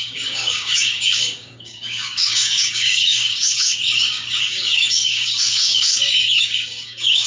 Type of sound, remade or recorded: remade